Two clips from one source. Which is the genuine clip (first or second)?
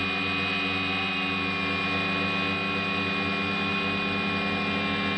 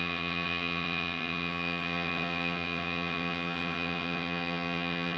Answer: first